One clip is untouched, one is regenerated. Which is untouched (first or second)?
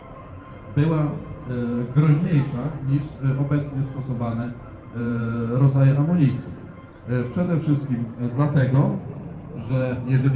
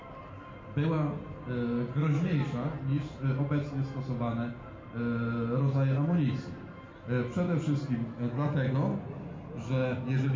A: second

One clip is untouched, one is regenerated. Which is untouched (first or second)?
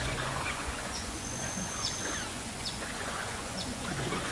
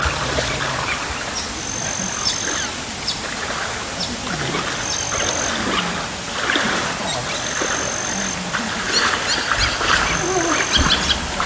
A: second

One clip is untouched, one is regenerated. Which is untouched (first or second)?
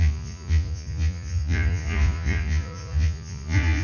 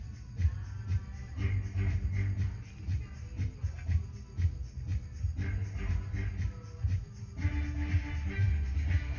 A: second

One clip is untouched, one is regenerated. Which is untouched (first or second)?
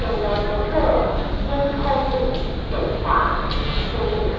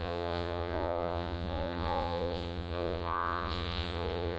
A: first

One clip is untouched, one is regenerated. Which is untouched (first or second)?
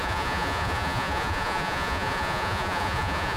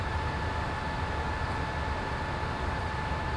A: second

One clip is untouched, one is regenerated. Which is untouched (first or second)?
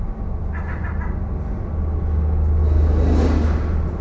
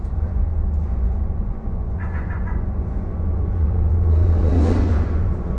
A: first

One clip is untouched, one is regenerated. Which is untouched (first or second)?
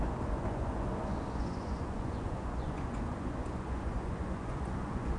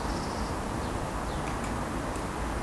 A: second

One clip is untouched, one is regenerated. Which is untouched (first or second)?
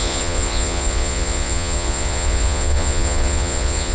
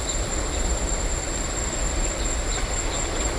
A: second